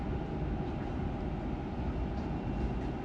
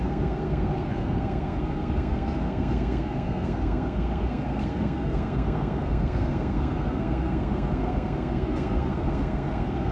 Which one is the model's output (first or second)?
second